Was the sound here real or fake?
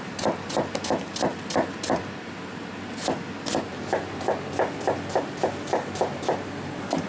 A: real